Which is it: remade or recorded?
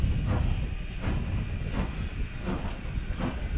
recorded